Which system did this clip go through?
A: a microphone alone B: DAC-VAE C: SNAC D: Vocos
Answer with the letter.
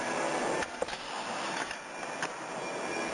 A